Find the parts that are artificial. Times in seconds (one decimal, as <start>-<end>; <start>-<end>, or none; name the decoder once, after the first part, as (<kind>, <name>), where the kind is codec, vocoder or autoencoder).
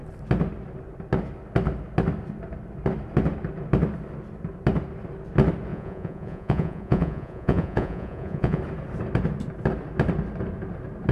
5.7-8.6 (vocoder, Vocos)